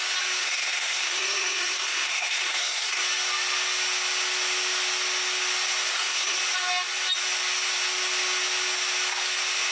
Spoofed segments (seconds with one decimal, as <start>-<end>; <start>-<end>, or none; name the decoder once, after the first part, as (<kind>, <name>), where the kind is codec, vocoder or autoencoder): 0.4-3.0 (codec, SNAC); 5.9-6.4

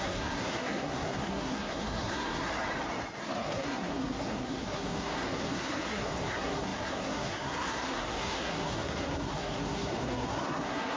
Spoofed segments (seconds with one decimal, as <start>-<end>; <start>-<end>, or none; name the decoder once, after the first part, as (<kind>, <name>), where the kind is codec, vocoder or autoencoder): 0.0-2.5 (codec, SNAC); 3.2-11.0

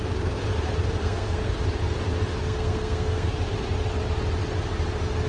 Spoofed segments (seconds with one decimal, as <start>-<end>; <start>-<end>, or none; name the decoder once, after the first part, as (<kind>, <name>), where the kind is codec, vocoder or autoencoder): 1.0-1.5 (codec, SNAC); 2.4-3.3

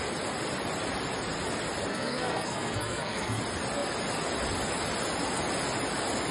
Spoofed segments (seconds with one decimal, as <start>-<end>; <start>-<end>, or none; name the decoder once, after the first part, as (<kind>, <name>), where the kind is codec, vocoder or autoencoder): 1.9-3.4 (codec, SNAC)